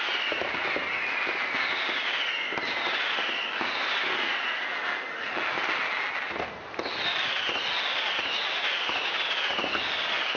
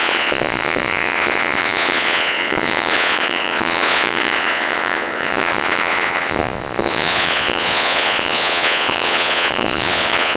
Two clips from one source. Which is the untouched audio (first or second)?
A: first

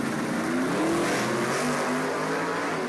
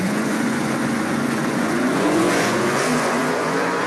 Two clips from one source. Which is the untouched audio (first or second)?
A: first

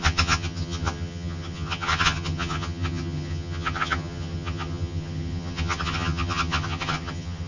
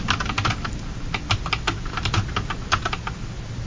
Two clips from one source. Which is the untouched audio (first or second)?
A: second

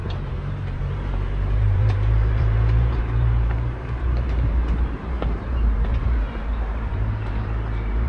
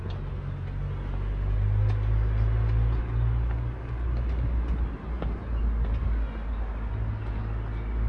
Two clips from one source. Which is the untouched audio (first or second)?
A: second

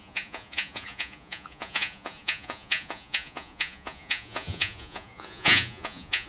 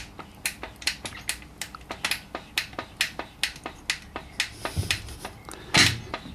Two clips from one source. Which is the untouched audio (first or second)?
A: second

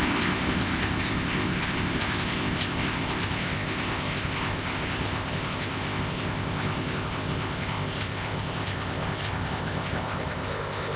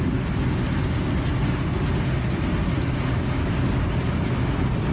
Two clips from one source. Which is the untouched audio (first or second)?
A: second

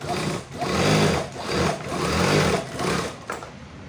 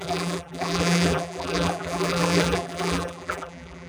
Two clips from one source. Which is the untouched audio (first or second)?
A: first